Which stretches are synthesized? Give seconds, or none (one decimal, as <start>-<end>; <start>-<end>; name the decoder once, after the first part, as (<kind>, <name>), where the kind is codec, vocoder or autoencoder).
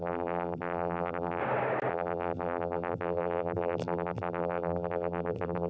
0.0-1.4 (vocoder, BigVGAN v2); 1.9-5.7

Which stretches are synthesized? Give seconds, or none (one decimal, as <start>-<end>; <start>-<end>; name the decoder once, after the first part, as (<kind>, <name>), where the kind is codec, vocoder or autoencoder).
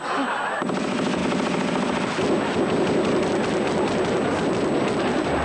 none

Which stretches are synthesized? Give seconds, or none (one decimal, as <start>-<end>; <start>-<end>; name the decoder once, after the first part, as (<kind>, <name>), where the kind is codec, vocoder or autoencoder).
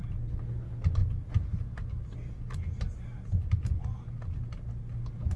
none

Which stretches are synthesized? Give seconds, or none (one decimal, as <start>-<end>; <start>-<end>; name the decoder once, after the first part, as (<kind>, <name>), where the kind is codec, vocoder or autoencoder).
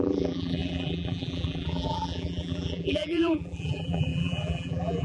0.0-5.0 (vocoder, BigVGAN v2)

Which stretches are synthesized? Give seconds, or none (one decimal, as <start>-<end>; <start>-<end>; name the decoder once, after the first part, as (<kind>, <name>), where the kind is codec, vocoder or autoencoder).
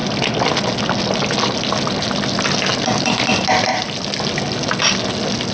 3.7-4.2 (vocoder, BigVGAN v2)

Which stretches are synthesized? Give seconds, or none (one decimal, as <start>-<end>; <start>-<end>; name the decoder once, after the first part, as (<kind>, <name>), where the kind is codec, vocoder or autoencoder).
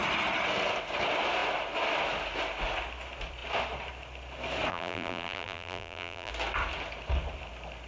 4.7-6.3 (vocoder, BigVGAN v2)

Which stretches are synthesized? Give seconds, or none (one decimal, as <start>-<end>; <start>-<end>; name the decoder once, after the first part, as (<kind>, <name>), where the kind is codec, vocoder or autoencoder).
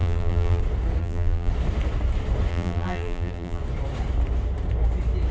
0.0-0.6 (vocoder, BigVGAN v2); 1.0-1.5; 2.5-3.6